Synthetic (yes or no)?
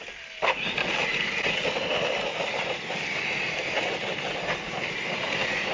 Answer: no